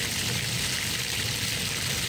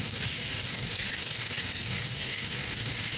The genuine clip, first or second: first